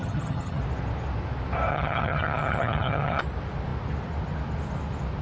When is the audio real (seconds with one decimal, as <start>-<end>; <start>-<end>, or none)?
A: 0.6-1.7; 3.2-5.2